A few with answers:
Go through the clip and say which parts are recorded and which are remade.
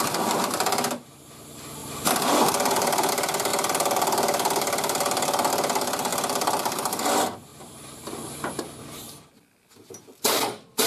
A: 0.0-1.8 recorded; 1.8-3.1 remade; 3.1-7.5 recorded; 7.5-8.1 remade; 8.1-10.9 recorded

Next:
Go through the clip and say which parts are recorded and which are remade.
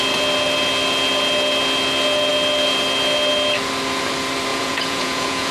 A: 0.0-4.5 recorded; 4.5-5.5 remade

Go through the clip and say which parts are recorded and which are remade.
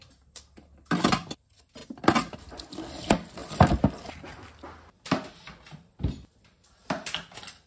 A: 0.0-7.7 recorded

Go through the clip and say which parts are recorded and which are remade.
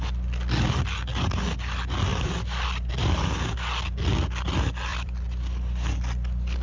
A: 0.0-2.1 recorded; 2.1-2.9 remade; 2.9-4.9 recorded; 4.9-5.9 remade; 5.9-6.6 recorded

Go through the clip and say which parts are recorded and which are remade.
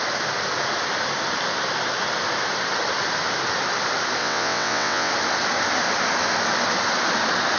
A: 0.0-4.2 recorded; 4.2-5.1 remade; 5.1-7.6 recorded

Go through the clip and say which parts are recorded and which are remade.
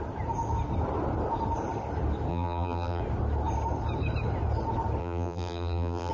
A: 0.0-2.3 recorded; 2.3-3.0 remade; 3.0-5.0 recorded; 5.0-6.1 remade